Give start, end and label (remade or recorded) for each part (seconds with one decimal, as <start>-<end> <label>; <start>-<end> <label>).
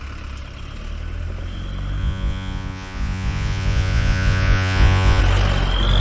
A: 0.0-2.0 recorded; 2.0-5.2 remade; 5.2-6.0 recorded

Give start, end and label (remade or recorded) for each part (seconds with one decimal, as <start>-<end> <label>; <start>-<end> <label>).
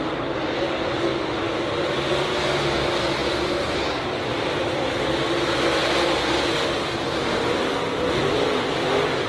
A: 0.0-9.3 recorded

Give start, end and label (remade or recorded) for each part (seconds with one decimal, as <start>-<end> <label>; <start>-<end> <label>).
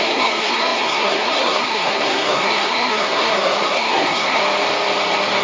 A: 0.0-4.4 remade; 4.4-5.4 recorded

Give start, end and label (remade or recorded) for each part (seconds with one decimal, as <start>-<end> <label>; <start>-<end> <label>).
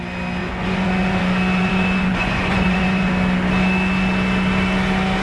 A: 0.0-0.4 recorded; 0.4-1.2 remade; 1.2-1.6 recorded; 1.6-3.1 remade; 3.1-5.2 recorded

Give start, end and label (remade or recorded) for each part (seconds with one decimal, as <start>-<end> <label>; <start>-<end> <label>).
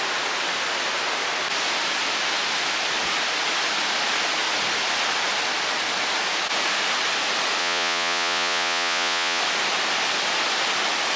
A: 0.0-7.6 recorded; 7.6-9.4 remade; 9.4-11.2 recorded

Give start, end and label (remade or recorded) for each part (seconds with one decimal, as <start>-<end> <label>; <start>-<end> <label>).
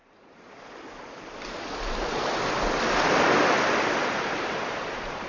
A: 0.0-5.3 recorded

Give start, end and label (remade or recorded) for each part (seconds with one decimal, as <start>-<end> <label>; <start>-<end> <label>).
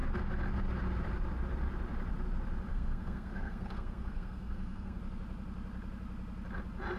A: 0.0-2.7 recorded; 2.7-5.0 remade; 5.0-7.0 recorded